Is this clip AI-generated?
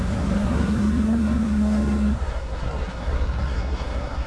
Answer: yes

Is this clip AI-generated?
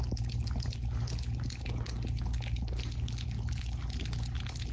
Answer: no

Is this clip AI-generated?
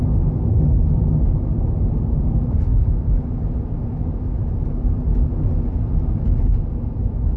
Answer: no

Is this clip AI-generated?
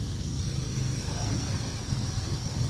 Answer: yes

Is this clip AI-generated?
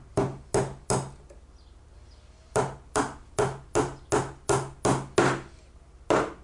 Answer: no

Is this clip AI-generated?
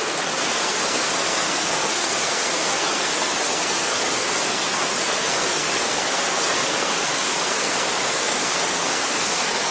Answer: yes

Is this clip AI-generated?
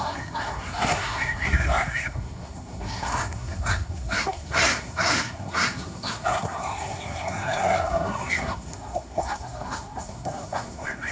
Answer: yes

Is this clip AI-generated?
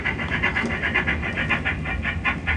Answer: no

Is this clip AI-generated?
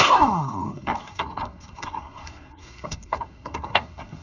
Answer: yes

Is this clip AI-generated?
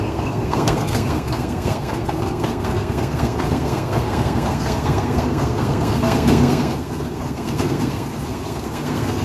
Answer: yes